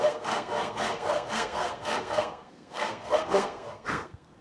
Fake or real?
fake